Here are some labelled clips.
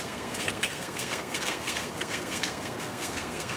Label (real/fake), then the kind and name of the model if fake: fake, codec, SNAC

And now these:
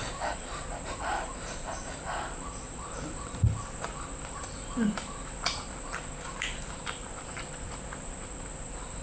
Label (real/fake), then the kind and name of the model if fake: fake, vocoder, BigVGAN v2